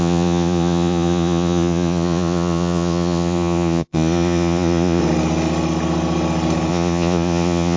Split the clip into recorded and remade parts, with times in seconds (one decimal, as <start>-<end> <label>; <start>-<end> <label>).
0.0-5.0 remade; 5.0-6.7 recorded; 6.7-7.8 remade